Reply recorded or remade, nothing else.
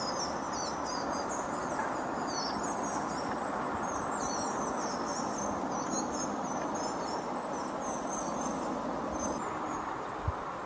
recorded